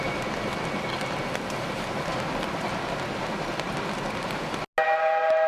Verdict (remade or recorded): recorded